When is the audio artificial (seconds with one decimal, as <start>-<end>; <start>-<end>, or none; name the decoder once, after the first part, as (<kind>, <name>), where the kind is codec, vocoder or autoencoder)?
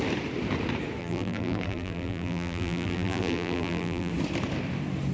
1.0-4.1 (vocoder, BigVGAN v2)